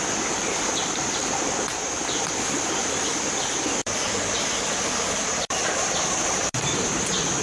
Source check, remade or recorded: remade